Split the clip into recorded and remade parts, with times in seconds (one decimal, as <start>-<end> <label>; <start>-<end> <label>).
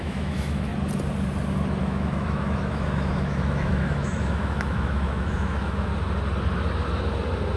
0.0-0.7 remade; 0.7-1.8 recorded; 1.8-5.9 remade; 5.9-7.6 recorded